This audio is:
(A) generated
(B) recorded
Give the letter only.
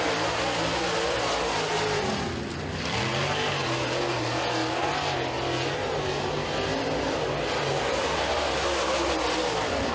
B